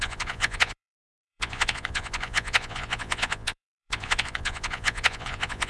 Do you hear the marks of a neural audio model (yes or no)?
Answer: yes